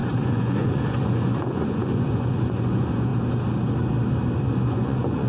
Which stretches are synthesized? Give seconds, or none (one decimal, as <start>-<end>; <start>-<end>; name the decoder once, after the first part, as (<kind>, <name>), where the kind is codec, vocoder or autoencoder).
0.0-3.1 (vocoder, Vocos); 4.4-5.3